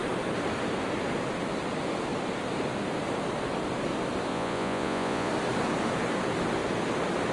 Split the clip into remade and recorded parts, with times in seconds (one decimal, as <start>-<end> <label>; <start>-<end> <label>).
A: 0.0-4.3 recorded; 4.3-5.3 remade; 5.3-7.3 recorded

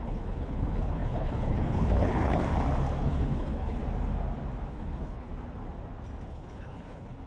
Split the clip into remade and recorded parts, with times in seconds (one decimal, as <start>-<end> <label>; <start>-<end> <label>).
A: 0.0-2.4 remade; 2.4-3.0 recorded; 3.0-3.8 remade; 3.8-4.7 recorded; 4.7-5.3 remade; 5.3-6.3 recorded; 6.3-7.3 remade